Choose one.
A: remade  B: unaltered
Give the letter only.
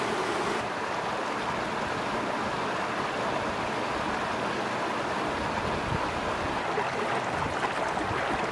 B